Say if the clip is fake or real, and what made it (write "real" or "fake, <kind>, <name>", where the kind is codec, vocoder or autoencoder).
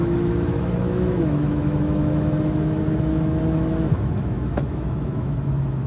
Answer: fake, autoencoder, DAC-VAE